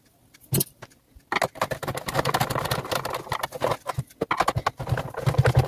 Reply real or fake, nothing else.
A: real